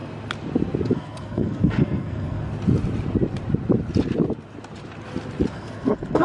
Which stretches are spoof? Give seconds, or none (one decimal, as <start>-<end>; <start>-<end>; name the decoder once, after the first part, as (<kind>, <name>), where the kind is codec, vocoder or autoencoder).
0.8-2.5 (codec, SNAC); 5.5-6.2